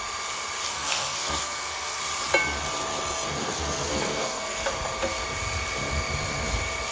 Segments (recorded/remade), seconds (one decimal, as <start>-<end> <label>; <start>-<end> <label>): 0.0-0.7 recorded; 0.7-2.0 remade; 2.0-3.3 recorded; 3.3-4.7 remade; 4.7-6.9 recorded